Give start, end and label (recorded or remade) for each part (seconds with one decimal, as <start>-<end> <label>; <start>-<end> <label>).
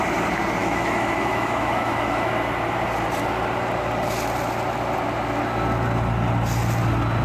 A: 0.0-0.6 recorded; 0.6-2.3 remade; 2.3-7.2 recorded